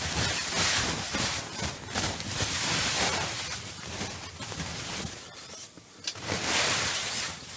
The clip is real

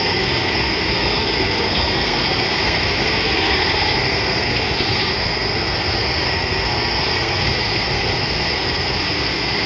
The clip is fake